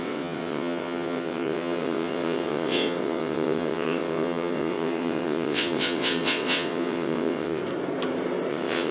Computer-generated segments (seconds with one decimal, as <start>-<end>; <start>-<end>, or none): 0.0-7.6; 8.5-8.9